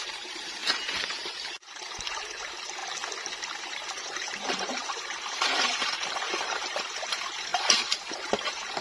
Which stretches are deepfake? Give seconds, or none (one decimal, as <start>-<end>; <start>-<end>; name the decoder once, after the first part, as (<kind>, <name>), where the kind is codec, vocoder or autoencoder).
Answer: 0.0-2.8 (vocoder, BigVGAN v2); 3.6-8.8